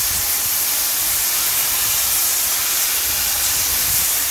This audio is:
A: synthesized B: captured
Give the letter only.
B